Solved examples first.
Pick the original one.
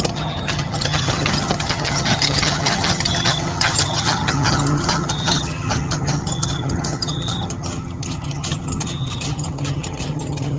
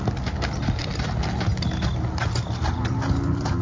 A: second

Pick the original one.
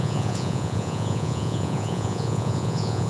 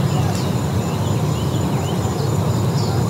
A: second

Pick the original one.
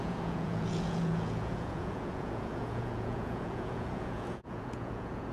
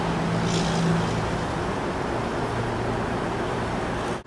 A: second